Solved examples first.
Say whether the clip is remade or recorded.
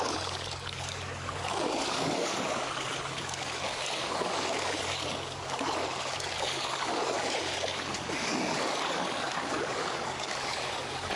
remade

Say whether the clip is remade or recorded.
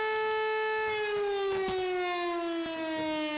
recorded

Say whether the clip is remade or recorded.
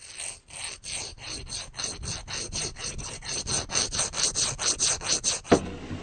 recorded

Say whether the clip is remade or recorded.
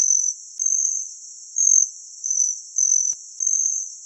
recorded